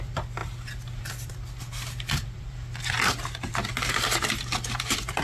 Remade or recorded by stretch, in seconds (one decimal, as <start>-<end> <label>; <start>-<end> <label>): 0.0-5.2 remade